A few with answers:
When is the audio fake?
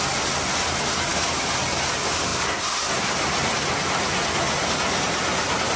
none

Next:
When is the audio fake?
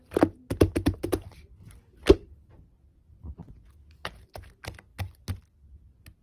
none